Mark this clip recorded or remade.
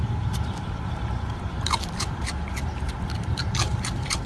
remade